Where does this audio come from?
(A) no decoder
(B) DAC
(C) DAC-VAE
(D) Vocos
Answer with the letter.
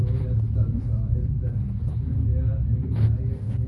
A